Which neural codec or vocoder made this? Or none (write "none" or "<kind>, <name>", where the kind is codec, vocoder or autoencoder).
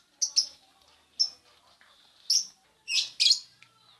none